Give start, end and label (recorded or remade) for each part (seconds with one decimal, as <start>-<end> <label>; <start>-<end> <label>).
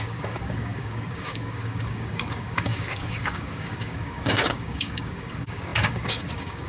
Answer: 0.0-6.7 remade